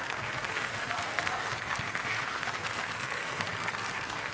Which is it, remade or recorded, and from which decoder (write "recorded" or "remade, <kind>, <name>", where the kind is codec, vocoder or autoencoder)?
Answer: remade, codec, SNAC